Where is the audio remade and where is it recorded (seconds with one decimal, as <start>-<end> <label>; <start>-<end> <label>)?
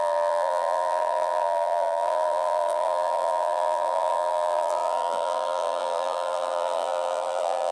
0.0-7.7 remade